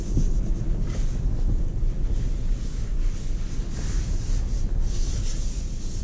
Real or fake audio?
real